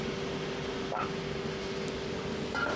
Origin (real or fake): fake